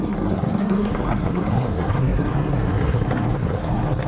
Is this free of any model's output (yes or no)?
no